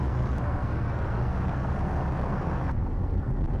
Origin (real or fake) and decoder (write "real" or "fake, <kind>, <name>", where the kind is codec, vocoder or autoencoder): fake, codec, SNAC